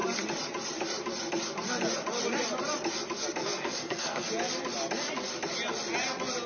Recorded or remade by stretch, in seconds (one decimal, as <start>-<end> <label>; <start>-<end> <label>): 0.0-3.4 recorded; 3.4-4.3 remade; 4.3-6.5 recorded